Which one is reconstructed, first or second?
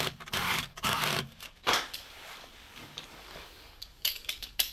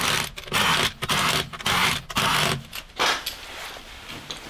first